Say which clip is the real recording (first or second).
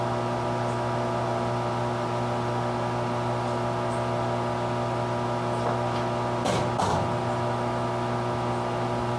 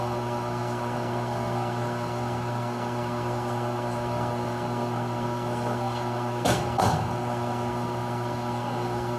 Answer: first